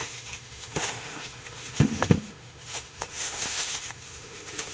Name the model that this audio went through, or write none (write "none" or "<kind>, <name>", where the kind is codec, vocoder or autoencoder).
autoencoder, DAC-VAE